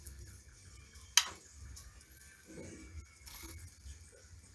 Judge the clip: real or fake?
real